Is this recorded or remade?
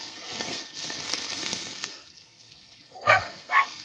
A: remade